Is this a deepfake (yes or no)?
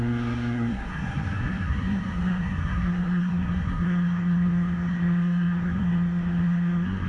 yes